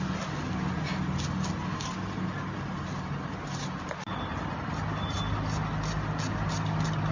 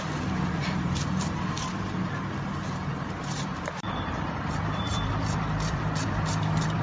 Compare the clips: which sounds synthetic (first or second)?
second